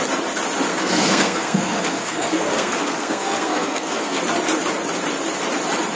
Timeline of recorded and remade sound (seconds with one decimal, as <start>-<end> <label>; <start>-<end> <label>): 0.0-0.7 recorded; 0.7-4.2 remade; 4.2-6.0 recorded

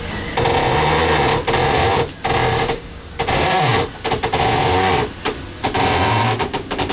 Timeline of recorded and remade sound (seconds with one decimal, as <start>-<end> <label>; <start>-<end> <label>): 0.0-2.5 recorded; 2.5-3.1 remade; 3.1-6.9 recorded

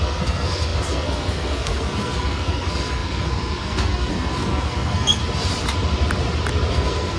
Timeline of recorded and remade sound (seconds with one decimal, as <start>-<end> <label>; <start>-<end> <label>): 0.0-5.2 remade; 5.2-6.7 recorded; 6.7-7.2 remade

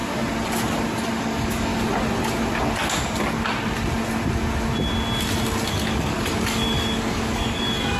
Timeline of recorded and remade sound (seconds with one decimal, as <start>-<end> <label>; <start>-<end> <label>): 0.0-1.2 recorded; 1.2-1.7 remade; 1.7-5.7 recorded; 5.7-8.0 remade